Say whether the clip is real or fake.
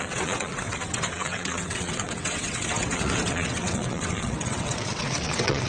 fake